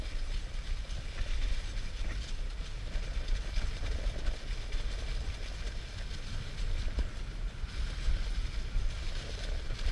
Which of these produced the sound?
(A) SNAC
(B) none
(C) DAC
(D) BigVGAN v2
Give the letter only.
B